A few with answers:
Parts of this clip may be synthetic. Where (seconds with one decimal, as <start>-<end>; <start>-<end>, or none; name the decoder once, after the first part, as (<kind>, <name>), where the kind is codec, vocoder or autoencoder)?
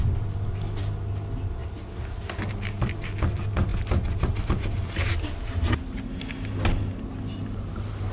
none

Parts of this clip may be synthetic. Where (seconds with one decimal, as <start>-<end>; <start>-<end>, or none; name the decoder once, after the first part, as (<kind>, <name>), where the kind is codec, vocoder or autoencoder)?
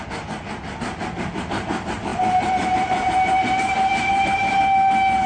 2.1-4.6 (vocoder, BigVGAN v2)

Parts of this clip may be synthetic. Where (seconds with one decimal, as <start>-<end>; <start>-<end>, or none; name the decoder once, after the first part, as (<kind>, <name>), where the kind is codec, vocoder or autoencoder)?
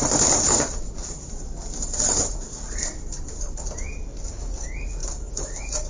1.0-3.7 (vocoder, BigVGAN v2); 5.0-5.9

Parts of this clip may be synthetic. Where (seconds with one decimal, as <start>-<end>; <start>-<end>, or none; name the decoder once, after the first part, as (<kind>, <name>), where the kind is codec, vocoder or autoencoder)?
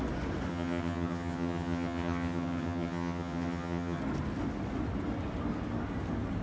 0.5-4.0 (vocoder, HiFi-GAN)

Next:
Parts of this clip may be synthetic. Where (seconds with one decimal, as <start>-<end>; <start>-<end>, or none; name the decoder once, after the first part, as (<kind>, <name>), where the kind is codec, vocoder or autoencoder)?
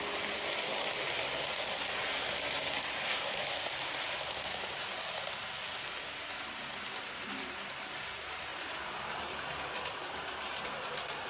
none